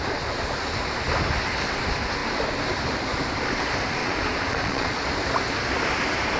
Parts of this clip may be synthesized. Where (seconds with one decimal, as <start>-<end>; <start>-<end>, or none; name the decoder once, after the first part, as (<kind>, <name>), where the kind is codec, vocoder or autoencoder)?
4.0-4.9 (vocoder, Vocos)